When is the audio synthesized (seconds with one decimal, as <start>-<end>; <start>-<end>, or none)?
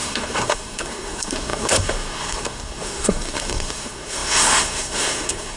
0.0-5.6